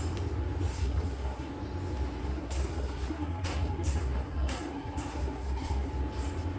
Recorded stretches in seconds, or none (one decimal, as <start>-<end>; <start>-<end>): 0.0-0.7; 1.5-2.2; 5.9-6.6